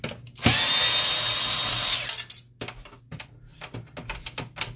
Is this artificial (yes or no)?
no